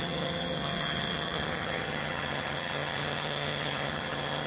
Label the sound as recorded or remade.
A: remade